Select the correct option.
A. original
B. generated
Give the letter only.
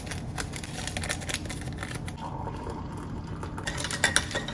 A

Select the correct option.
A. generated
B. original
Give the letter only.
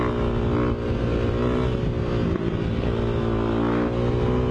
B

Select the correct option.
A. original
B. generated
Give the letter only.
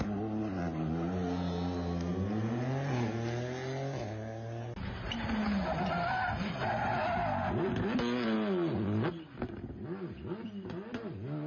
A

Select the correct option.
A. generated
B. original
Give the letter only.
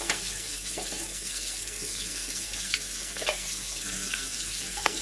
A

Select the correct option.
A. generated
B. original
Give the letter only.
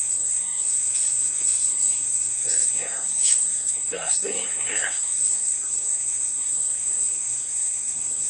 A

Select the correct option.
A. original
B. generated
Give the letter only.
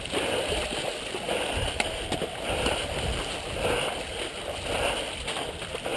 A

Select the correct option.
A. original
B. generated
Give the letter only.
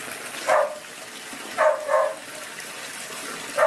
A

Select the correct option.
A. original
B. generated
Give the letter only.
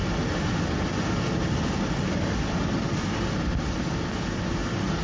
A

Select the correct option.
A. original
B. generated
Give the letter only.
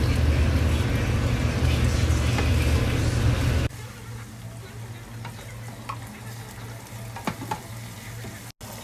A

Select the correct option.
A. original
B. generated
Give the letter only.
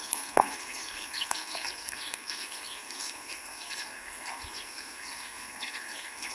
B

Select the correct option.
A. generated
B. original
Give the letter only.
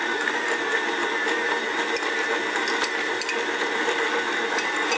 B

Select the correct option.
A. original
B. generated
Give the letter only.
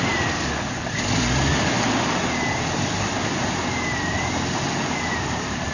A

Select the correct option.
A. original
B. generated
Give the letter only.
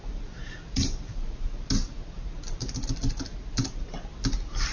A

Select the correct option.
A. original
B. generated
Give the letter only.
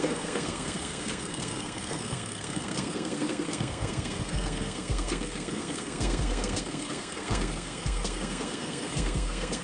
B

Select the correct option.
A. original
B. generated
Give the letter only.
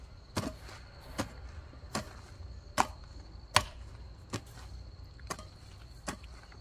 A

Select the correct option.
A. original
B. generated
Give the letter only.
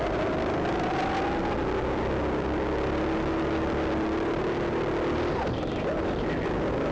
A